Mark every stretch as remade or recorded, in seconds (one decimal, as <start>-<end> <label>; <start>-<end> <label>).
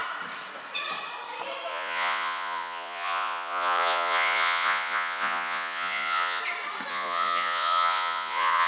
0.0-1.7 recorded; 1.7-6.4 remade; 6.4-6.9 recorded; 6.9-8.7 remade